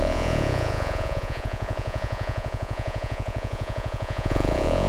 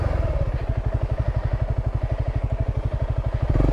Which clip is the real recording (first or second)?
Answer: second